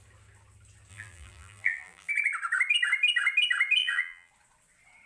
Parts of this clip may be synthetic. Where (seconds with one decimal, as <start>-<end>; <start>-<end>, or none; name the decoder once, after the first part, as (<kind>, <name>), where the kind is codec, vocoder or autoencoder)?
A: 0.9-2.1 (vocoder, BigVGAN v2); 3.8-4.3